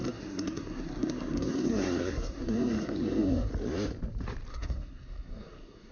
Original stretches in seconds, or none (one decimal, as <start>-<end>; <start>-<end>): 3.5-4.5